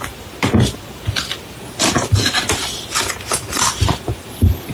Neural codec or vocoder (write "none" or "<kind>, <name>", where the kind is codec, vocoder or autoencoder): none